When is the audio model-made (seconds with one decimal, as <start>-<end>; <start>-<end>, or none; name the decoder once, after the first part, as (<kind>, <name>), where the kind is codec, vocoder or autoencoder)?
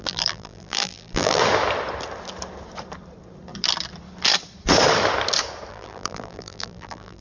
0.0-1.4 (vocoder, BigVGAN v2); 5.7-7.2